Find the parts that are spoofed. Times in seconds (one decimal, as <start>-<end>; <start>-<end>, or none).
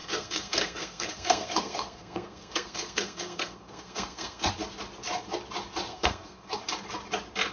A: 0.0-4.5; 5.9-6.6